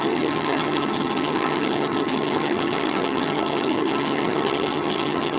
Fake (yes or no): yes